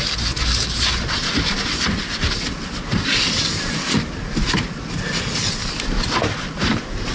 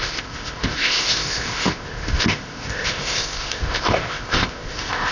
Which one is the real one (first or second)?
first